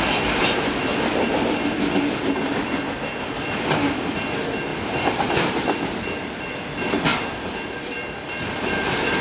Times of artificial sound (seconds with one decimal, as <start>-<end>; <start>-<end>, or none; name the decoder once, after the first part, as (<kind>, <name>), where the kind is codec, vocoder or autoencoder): 4.7-5.3 (vocoder, BigVGAN v2); 7.1-9.2

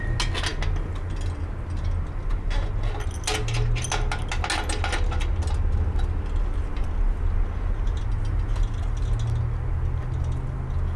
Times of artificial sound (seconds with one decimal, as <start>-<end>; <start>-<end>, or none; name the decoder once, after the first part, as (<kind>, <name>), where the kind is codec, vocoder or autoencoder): none

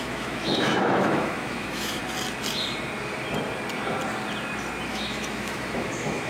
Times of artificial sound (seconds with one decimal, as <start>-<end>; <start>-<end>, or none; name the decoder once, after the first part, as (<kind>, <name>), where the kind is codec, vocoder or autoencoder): 0.0-2.0 (autoencoder, DAC-VAE); 4.9-6.3

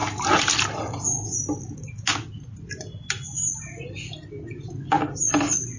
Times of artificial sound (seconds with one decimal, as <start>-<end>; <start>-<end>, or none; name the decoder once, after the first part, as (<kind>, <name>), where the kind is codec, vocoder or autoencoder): none

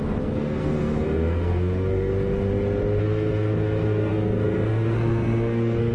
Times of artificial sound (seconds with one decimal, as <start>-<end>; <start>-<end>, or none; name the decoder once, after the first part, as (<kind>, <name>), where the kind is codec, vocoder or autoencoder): 0.0-2.1 (codec, SNAC); 3.0-5.9

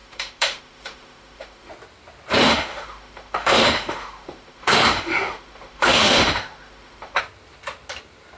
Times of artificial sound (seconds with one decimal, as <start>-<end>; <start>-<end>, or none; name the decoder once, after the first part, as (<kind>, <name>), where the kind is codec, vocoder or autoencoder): 0.0-1.7 (autoencoder, DAC-VAE); 2.4-7.2